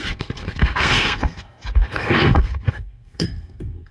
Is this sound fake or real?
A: fake